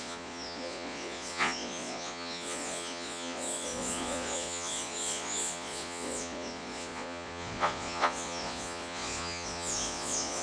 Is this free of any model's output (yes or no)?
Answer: no